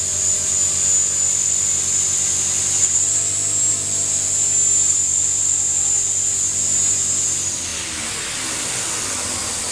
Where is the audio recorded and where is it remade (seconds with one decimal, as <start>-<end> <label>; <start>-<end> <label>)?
0.0-9.7 recorded